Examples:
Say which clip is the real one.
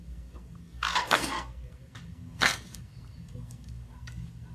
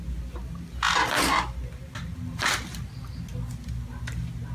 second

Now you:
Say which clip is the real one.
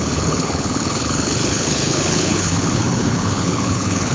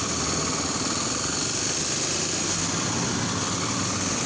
second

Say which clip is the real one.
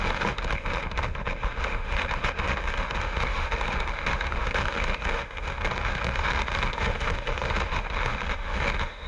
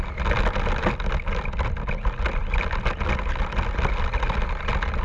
second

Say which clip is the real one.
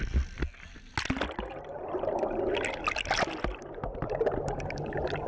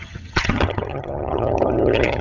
first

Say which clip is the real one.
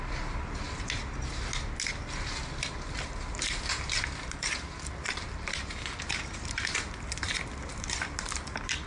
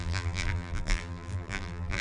first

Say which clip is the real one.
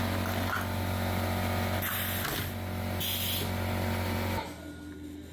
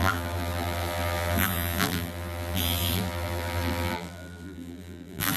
first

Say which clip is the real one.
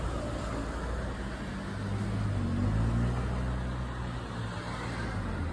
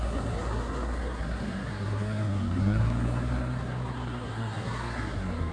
first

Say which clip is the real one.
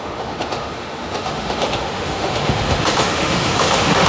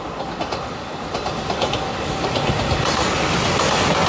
second